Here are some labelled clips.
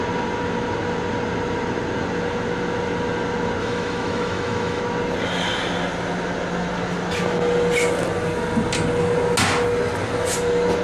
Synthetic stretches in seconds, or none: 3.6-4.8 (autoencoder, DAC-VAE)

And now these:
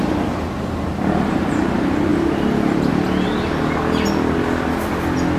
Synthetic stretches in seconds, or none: none

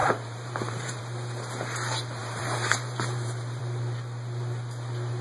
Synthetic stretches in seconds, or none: 0.0-1.0 (vocoder, BigVGAN v2); 2.2-3.6

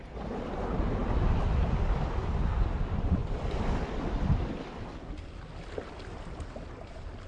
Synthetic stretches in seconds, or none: none

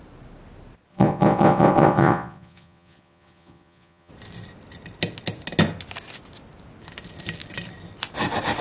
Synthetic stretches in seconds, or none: 0.9-4.1 (vocoder, Vocos)